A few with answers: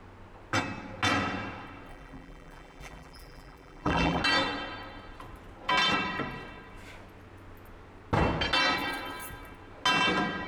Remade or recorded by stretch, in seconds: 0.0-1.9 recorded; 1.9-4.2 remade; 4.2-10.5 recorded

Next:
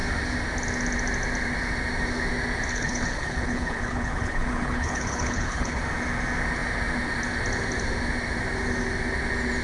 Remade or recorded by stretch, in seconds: 0.0-2.7 recorded; 2.7-5.8 remade; 5.8-9.6 recorded

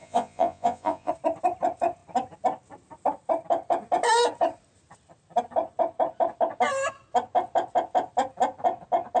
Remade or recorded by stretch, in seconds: 0.0-1.1 remade; 1.1-9.2 recorded

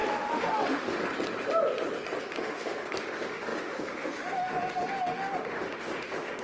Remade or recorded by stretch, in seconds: 0.0-1.0 remade; 1.0-2.2 recorded; 2.2-6.4 remade

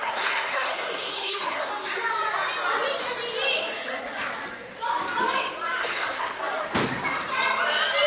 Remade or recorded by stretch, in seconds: 0.0-1.7 remade; 1.7-5.8 recorded; 5.8-6.4 remade; 6.4-8.1 recorded

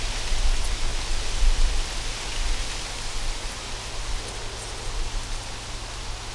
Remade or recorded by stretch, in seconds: 0.0-6.3 recorded

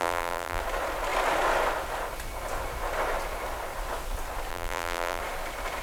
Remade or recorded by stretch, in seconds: 0.0-0.6 remade; 0.6-4.5 recorded; 4.5-5.2 remade; 5.2-5.8 recorded